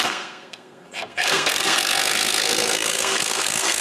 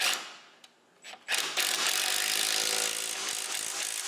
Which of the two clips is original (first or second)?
second